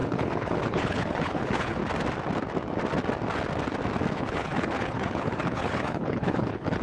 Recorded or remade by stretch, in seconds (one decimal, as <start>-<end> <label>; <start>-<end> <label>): 0.0-1.8 remade; 1.8-4.1 recorded; 4.1-6.8 remade